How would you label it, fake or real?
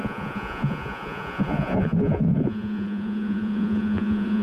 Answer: fake